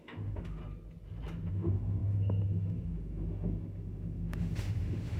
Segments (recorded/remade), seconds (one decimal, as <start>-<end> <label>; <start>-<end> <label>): 0.0-0.6 remade; 0.6-1.5 recorded; 1.5-5.2 remade